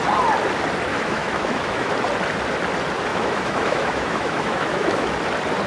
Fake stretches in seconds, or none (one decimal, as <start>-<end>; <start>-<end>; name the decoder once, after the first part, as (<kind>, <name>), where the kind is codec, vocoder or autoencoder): 0.9-1.9 (autoencoder, DAC-VAE); 3.1-5.1